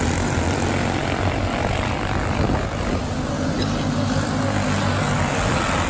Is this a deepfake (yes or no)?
no